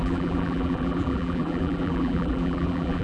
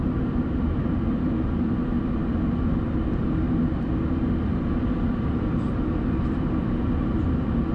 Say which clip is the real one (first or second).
second